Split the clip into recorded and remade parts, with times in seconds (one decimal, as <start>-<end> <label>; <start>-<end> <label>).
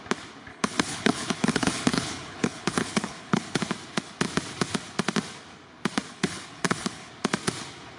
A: 0.0-0.5 recorded; 0.5-3.6 remade; 3.6-6.1 recorded; 6.1-7.1 remade; 7.1-8.0 recorded